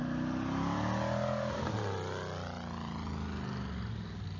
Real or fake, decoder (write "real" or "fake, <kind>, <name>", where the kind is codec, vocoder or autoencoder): real